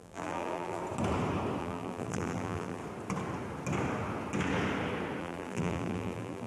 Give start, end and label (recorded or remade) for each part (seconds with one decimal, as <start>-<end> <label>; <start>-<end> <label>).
0.0-0.8 remade; 0.8-1.6 recorded; 1.6-2.8 remade; 2.8-5.2 recorded; 5.2-6.5 remade